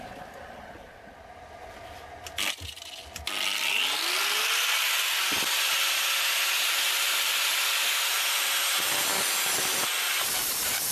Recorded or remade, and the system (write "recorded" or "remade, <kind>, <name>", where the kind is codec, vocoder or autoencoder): recorded